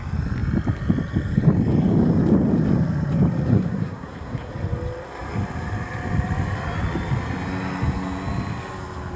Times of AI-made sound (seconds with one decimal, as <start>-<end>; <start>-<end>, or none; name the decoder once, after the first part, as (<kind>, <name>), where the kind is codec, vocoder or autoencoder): 3.5-4.5 (codec, SNAC)